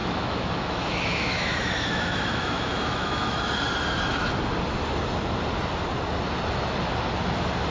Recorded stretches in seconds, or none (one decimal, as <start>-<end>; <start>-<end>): 3.4-7.7